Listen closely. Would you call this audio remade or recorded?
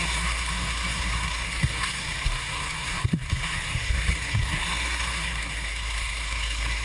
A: remade